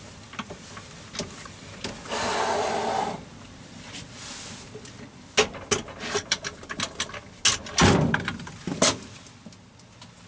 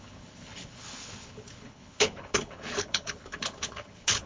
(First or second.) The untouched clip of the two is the first